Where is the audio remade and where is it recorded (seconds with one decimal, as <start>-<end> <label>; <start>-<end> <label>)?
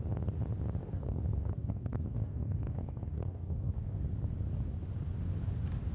0.0-0.8 recorded; 0.8-4.0 remade; 4.0-5.9 recorded